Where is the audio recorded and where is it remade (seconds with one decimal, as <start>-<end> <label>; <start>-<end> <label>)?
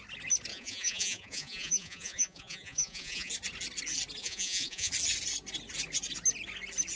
0.0-0.5 recorded; 0.5-3.3 remade; 3.3-4.2 recorded; 4.2-4.9 remade; 4.9-7.0 recorded